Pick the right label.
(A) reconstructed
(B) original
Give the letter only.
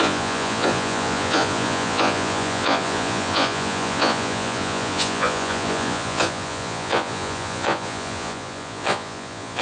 A